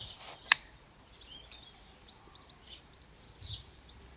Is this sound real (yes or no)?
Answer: no